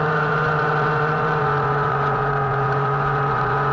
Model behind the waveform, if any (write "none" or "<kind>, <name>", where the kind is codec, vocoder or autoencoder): vocoder, Vocos